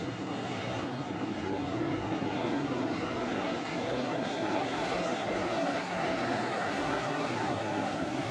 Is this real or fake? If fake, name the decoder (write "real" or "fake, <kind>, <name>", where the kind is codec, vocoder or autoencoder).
fake, codec, SNAC